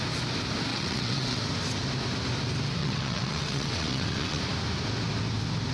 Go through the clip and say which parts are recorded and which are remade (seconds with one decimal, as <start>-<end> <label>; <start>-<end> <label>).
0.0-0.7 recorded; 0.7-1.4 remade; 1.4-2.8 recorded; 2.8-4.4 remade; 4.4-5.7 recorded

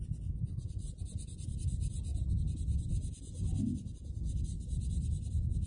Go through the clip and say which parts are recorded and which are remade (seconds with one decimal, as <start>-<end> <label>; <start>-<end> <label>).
0.0-5.7 recorded

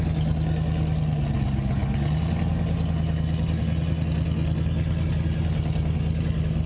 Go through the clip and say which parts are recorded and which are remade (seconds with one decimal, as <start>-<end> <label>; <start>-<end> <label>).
0.0-6.7 recorded